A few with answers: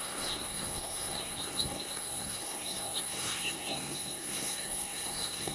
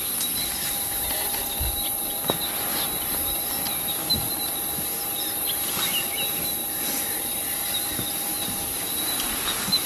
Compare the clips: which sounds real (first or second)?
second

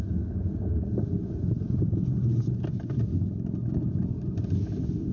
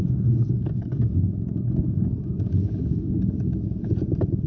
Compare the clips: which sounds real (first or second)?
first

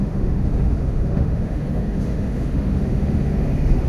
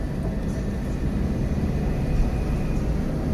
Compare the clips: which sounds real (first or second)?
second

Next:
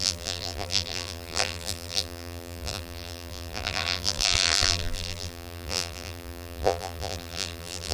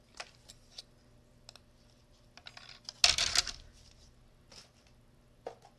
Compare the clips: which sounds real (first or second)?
second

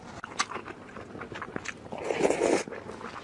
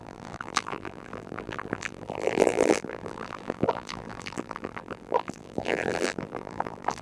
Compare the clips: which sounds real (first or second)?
first